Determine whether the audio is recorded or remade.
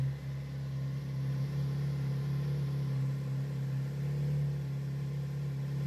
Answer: recorded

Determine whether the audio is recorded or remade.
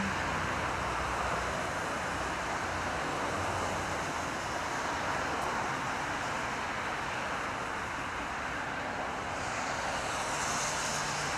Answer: recorded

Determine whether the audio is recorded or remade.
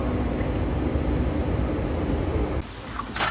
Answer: recorded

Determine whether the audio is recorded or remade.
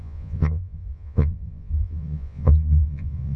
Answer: remade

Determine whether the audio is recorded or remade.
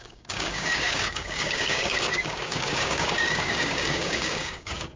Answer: remade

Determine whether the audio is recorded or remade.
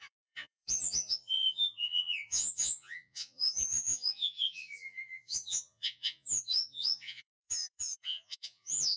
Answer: remade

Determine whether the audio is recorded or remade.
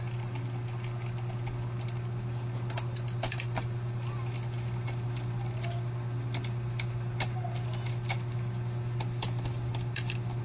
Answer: recorded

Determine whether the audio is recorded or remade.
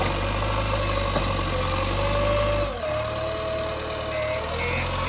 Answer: recorded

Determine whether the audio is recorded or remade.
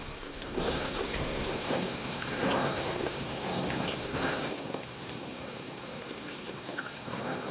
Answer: remade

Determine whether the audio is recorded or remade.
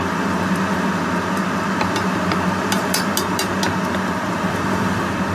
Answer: recorded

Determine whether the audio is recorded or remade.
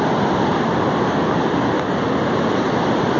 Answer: recorded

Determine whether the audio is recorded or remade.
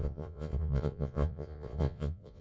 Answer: remade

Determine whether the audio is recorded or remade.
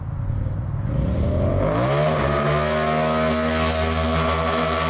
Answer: recorded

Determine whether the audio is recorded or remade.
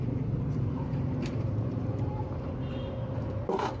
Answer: remade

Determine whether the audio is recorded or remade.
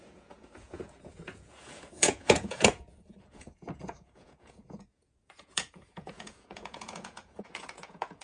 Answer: remade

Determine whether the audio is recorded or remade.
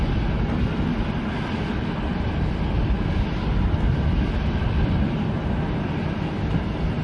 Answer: recorded